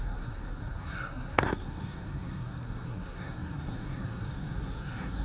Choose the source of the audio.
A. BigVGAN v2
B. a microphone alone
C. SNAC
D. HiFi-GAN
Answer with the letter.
C